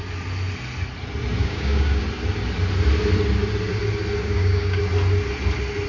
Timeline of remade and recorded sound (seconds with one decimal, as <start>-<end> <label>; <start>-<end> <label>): 0.0-1.4 recorded; 1.4-2.0 remade; 2.0-4.2 recorded; 4.2-4.8 remade; 4.8-5.9 recorded